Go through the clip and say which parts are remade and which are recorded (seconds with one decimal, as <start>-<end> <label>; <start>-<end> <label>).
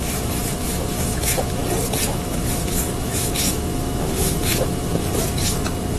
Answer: 0.0-1.6 remade; 1.6-2.1 recorded; 2.1-4.9 remade; 4.9-6.0 recorded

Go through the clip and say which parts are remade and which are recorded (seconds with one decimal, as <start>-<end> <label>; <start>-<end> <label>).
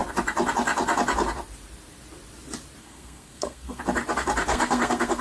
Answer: 0.0-2.8 recorded; 2.8-3.8 remade; 3.8-4.5 recorded; 4.5-5.2 remade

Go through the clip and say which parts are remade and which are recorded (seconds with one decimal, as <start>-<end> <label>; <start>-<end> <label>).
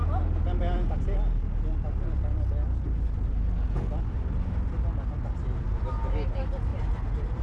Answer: 0.0-7.4 recorded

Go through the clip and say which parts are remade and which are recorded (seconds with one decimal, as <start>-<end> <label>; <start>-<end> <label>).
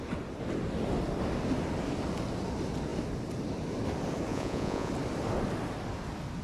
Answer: 0.0-4.3 recorded; 4.3-4.9 remade; 4.9-6.4 recorded